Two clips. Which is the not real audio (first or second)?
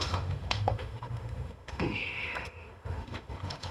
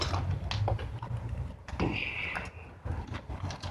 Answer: first